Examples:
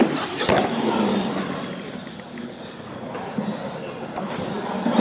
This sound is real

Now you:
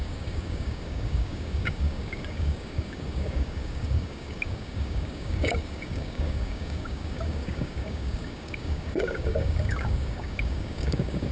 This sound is fake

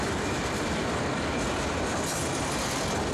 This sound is real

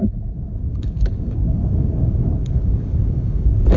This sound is fake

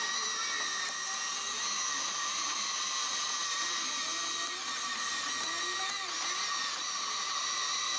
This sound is real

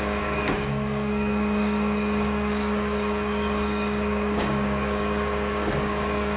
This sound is fake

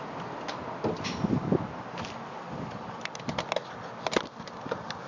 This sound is real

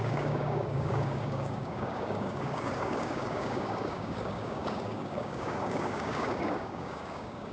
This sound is fake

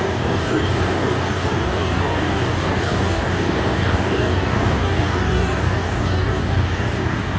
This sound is fake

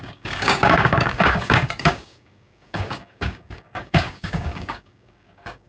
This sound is fake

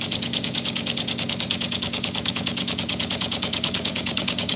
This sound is fake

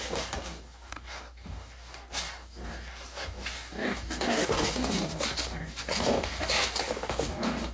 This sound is fake